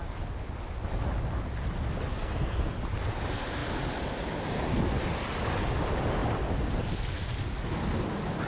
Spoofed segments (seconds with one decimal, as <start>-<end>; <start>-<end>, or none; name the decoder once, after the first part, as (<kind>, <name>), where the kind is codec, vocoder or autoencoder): 2.1-2.7 (codec, SNAC)